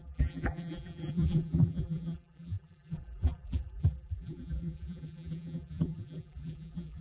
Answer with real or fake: fake